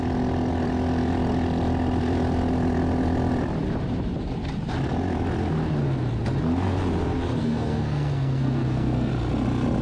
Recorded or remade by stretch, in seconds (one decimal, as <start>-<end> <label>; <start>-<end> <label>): 0.0-7.4 recorded; 7.4-9.1 remade; 9.1-9.8 recorded